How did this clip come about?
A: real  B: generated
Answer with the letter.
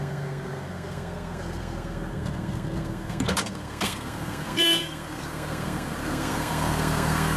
B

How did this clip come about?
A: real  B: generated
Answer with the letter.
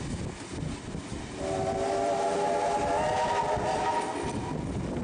A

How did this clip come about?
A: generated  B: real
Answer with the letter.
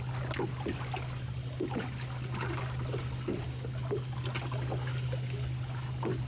B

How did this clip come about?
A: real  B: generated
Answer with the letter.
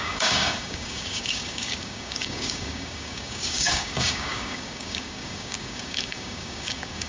B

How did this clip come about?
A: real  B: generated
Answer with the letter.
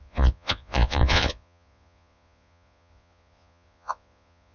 B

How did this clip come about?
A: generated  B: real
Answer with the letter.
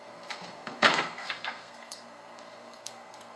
A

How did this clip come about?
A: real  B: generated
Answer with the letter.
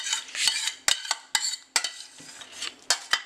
A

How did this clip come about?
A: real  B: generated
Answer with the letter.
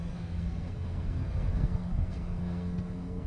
B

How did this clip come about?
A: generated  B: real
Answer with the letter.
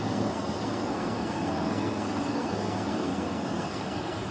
A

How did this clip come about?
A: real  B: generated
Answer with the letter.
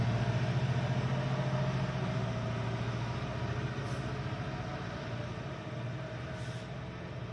A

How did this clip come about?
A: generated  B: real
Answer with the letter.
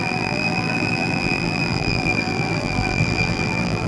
A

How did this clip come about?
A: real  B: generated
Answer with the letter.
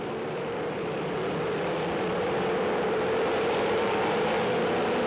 A